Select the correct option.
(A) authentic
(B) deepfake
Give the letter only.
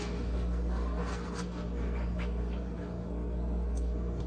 B